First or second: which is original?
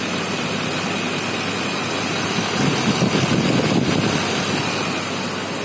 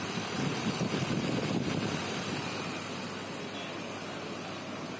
first